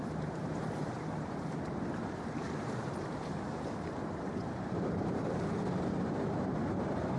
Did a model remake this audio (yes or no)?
yes